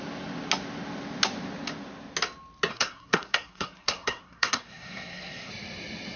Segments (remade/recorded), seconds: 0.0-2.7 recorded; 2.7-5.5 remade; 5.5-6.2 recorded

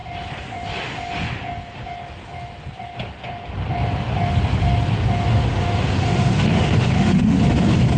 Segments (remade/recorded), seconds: 0.0-5.3 recorded; 5.3-7.4 remade; 7.4-8.0 recorded

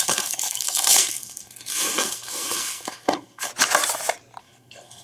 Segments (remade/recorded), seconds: 0.0-3.5 remade; 3.5-4.4 recorded; 4.4-5.0 remade

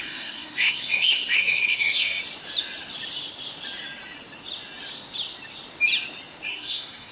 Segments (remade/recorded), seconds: 0.0-2.2 remade; 2.2-6.5 recorded; 6.5-7.1 remade

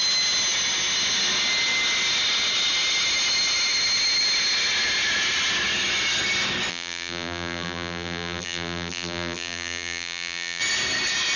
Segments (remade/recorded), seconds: 0.0-6.7 recorded; 6.7-10.6 remade; 10.6-11.4 recorded

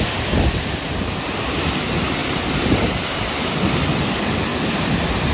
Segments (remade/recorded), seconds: 0.0-2.2 recorded; 2.2-3.5 remade; 3.5-4.5 recorded; 4.5-5.3 remade

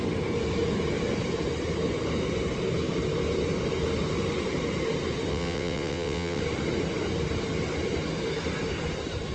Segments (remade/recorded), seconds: 0.0-5.3 recorded; 5.3-6.4 remade; 6.4-9.3 recorded

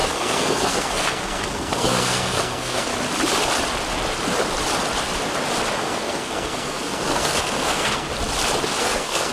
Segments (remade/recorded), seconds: 0.0-2.9 remade; 2.9-5.8 recorded; 5.8-8.1 remade; 8.1-8.8 recorded; 8.8-9.3 remade